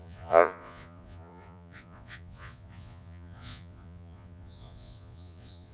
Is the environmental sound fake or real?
fake